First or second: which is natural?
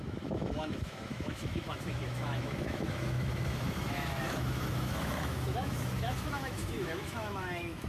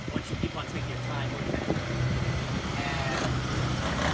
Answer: second